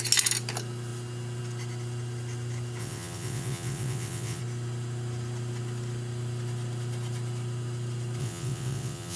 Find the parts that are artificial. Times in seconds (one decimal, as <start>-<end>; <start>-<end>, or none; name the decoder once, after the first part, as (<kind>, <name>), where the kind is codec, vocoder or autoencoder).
2.8-4.4 (vocoder, WaveNeXt); 8.2-9.2